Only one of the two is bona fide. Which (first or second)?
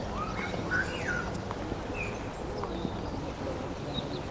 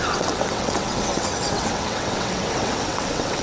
first